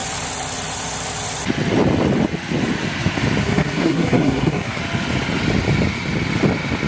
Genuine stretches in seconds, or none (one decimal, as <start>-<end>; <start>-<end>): 0.0-3.4; 4.8-6.9